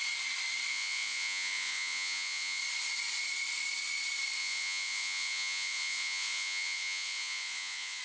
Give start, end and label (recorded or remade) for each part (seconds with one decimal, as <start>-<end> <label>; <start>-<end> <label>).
0.0-0.7 recorded; 0.7-2.6 remade; 2.6-4.4 recorded; 4.4-8.0 remade